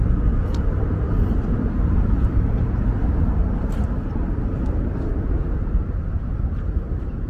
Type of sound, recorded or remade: remade